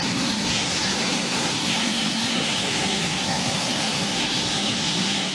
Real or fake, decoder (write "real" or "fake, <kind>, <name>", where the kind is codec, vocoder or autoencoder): fake, codec, SNAC